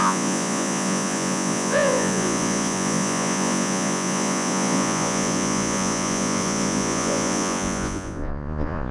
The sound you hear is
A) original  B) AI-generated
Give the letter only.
B